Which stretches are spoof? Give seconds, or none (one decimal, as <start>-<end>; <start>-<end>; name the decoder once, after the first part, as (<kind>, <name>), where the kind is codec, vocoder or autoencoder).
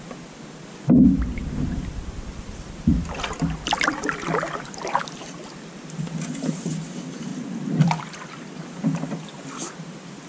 1.4-5.0 (vocoder, BigVGAN v2); 7.3-8.6